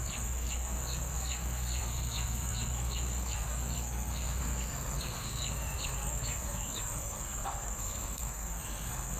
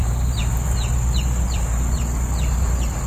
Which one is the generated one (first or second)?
first